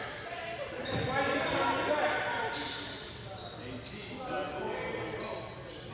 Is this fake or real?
real